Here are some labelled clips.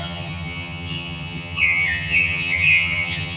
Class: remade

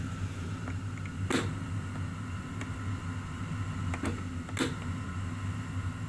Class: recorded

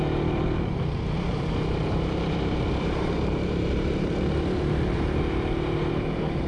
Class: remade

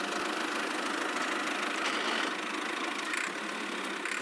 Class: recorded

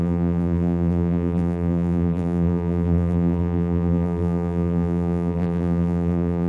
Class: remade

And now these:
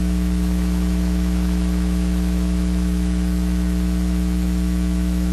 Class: remade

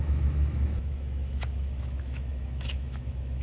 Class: remade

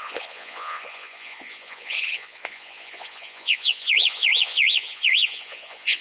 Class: remade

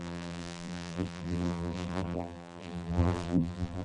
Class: remade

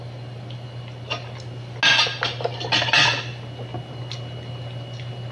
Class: recorded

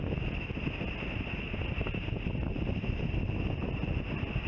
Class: recorded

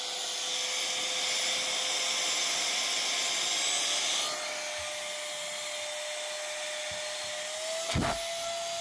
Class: recorded